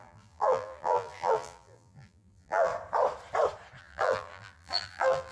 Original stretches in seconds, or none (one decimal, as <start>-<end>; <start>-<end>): 2.7-3.8